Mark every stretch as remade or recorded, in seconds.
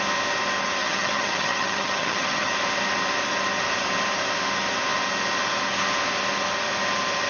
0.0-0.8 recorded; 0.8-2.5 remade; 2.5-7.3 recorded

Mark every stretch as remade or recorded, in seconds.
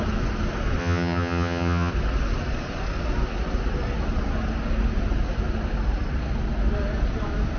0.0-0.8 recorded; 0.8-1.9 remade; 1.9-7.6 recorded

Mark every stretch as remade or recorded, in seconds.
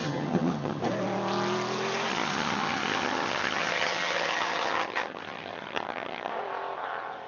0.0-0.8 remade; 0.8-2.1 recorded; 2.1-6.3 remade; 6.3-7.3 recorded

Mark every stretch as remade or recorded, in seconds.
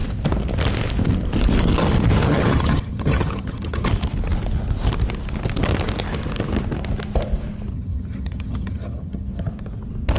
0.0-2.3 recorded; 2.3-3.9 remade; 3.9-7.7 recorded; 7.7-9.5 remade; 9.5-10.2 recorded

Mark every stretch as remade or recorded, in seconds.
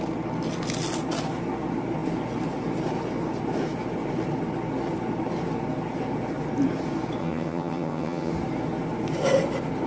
0.0-7.2 recorded; 7.2-8.3 remade; 8.3-9.9 recorded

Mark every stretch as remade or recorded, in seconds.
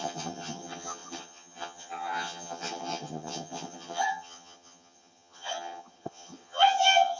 0.0-7.2 remade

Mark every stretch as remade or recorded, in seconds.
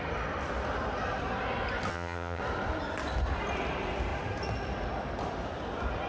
0.0-1.9 recorded; 1.9-2.4 remade; 2.4-6.1 recorded